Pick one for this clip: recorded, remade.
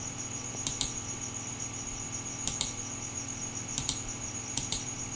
remade